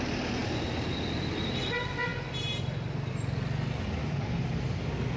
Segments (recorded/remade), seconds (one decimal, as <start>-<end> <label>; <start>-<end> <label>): 0.0-5.2 recorded